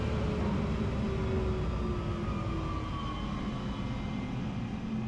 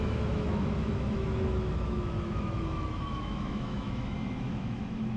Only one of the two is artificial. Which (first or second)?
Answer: second